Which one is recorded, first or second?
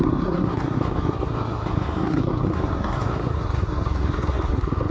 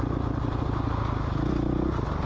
second